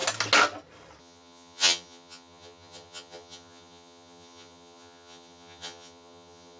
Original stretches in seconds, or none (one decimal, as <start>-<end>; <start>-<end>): 0.0-1.0